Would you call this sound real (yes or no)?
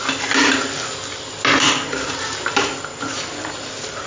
yes